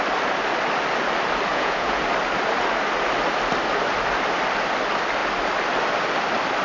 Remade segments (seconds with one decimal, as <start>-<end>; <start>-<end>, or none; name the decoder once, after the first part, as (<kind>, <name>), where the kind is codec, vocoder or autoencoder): 1.5-2.0 (vocoder, Vocos)